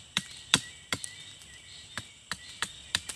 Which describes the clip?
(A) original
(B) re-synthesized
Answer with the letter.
B